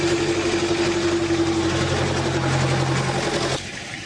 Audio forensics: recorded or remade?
recorded